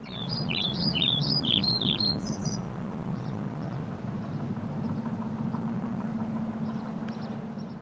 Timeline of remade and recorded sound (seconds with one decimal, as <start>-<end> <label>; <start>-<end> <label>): 0.0-3.8 remade; 3.8-5.6 recorded; 5.6-6.1 remade; 6.1-7.8 recorded